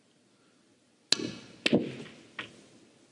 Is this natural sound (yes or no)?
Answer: yes